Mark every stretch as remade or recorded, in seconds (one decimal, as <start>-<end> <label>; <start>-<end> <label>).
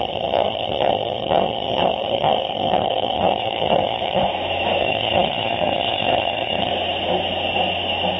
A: 0.0-4.2 remade; 4.2-4.8 recorded; 4.8-6.7 remade; 6.7-8.2 recorded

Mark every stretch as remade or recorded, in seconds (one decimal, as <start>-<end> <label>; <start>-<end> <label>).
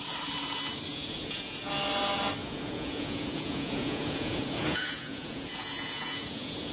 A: 0.0-0.9 recorded; 0.9-1.7 remade; 1.7-2.4 recorded; 2.4-6.7 remade